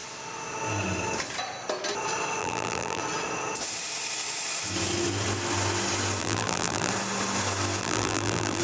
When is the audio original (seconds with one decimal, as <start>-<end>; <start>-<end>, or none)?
0.0-2.4; 3.0-6.2; 6.9-7.8